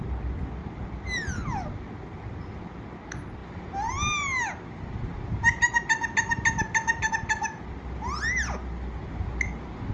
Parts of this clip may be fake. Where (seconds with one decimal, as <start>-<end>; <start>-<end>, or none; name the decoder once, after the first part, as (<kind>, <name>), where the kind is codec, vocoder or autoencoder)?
0.6-1.9 (vocoder, BigVGAN v2)